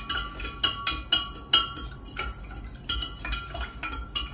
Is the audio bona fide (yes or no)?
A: yes